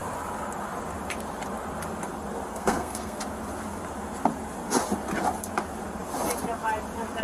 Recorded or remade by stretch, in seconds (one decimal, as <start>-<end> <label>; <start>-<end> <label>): 0.0-2.5 recorded; 2.5-3.2 remade; 3.2-7.2 recorded